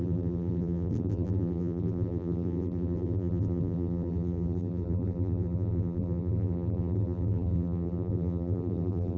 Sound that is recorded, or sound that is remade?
remade